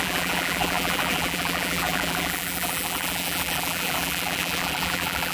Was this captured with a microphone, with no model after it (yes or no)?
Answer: no